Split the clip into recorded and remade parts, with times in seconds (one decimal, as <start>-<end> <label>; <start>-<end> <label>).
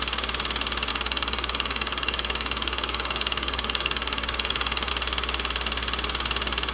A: 0.0-0.9 recorded; 0.9-4.9 remade; 4.9-6.7 recorded